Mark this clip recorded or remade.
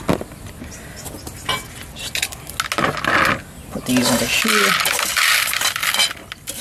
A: recorded